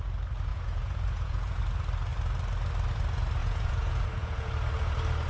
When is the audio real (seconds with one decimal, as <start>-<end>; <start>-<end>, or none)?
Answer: 0.0-0.5; 1.6-3.4; 4.5-5.3